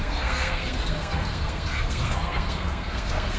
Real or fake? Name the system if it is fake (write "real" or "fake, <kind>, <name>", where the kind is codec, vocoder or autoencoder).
fake, codec, SNAC